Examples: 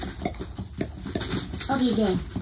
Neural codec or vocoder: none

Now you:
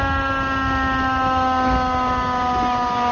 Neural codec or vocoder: none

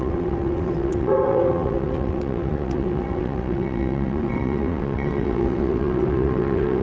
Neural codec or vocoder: vocoder, WaveNeXt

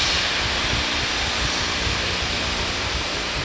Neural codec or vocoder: none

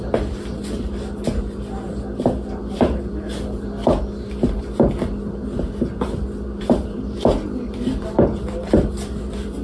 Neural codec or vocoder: none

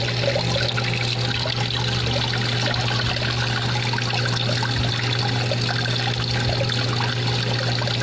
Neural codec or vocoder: none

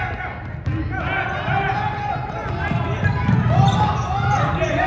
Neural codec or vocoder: none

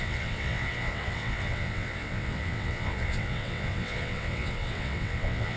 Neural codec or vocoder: vocoder, WaveNeXt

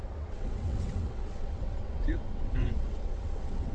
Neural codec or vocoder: vocoder, WaveNeXt